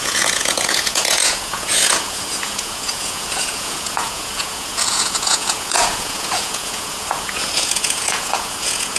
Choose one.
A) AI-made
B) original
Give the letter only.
A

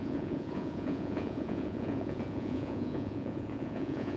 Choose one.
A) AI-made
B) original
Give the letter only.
A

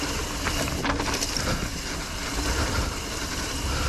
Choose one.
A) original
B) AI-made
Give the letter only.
A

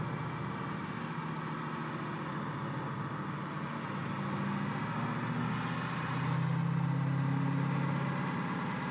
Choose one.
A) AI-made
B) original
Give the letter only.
B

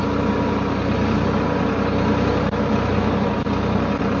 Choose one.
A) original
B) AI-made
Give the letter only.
A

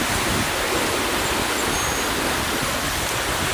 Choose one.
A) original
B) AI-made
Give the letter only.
A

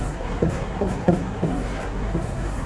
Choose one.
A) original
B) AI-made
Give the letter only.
B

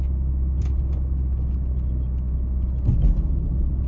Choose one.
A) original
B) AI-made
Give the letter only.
A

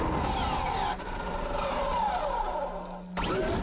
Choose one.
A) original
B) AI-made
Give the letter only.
A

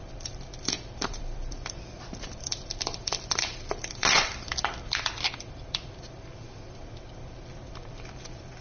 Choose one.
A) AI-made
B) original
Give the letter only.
A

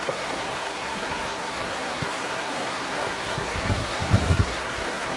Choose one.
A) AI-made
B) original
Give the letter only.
A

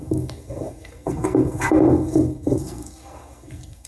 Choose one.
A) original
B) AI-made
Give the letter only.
B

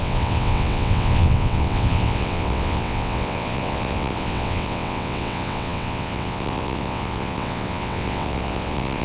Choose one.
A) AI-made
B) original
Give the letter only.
A